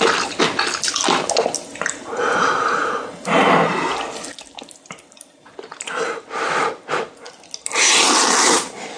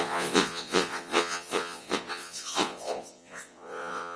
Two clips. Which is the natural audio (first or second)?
first